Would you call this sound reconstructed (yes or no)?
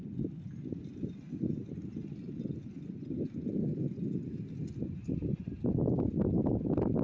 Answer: no